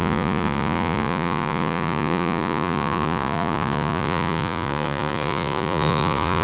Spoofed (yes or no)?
yes